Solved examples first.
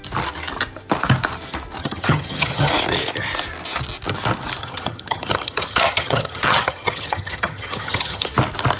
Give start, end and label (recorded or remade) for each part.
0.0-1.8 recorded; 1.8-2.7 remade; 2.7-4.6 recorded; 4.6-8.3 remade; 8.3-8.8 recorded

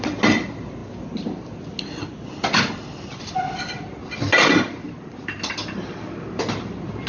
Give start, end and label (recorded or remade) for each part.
0.0-7.1 recorded

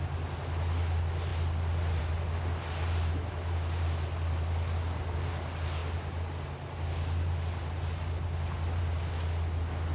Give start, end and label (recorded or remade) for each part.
0.0-9.9 recorded

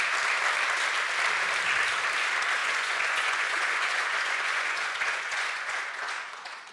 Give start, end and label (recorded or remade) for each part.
0.0-2.6 recorded; 2.6-6.7 remade

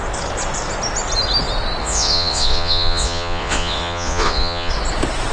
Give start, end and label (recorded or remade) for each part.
0.0-1.8 recorded; 1.8-4.7 remade; 4.7-5.3 recorded

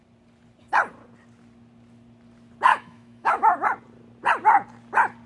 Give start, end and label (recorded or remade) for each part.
0.0-2.7 recorded; 2.7-3.5 remade; 3.5-5.3 recorded

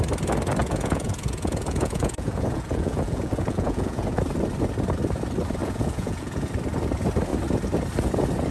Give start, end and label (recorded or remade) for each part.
0.0-0.6 recorded; 0.6-4.2 remade; 4.2-5.6 recorded; 5.6-6.5 remade; 6.5-8.5 recorded

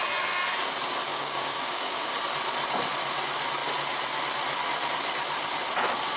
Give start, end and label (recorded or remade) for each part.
0.0-1.1 recorded; 1.1-2.2 remade; 2.2-6.2 recorded